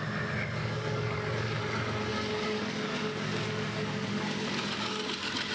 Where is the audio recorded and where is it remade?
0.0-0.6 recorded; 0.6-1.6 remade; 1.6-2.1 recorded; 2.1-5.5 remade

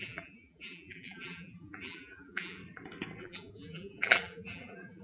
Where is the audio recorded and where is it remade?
0.0-2.6 remade; 2.6-3.2 recorded; 3.2-5.0 remade

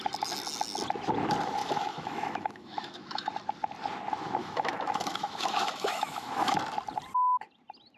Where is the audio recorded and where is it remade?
0.0-1.6 recorded; 1.6-3.3 remade; 3.3-4.4 recorded; 4.4-6.6 remade; 6.6-8.0 recorded

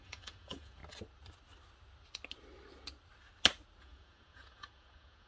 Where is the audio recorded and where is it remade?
0.0-0.8 remade; 0.8-3.8 recorded; 3.8-5.3 remade

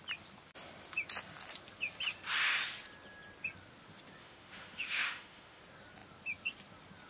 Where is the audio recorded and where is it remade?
0.0-4.2 recorded; 4.2-5.6 remade; 5.6-7.1 recorded

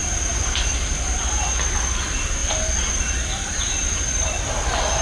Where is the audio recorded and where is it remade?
0.0-2.4 remade; 2.4-2.9 recorded; 2.9-5.0 remade

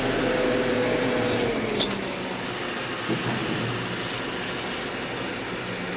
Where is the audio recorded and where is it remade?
0.0-6.0 recorded